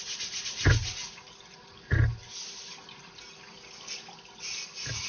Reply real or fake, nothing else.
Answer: real